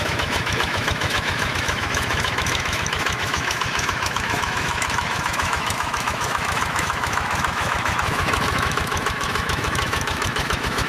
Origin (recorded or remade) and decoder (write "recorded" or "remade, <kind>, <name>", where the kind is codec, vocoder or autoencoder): remade, autoencoder, DAC-VAE